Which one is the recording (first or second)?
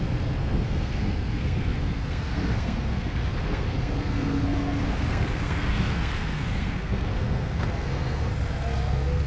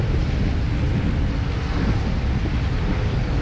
second